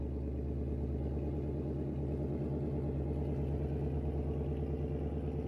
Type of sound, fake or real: real